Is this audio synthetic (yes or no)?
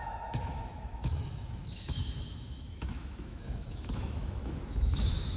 yes